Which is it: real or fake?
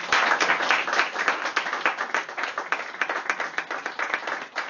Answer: real